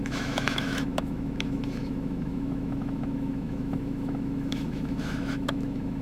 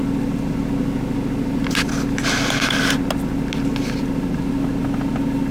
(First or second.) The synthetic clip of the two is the first